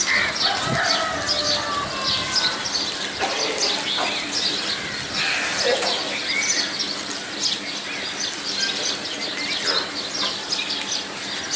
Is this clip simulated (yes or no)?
no